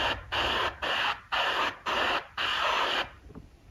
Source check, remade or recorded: recorded